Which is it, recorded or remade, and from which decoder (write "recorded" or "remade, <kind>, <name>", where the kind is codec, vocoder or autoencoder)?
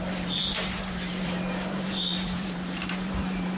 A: remade, vocoder, BigVGAN v2